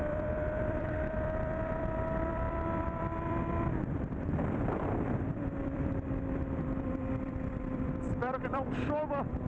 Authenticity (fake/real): fake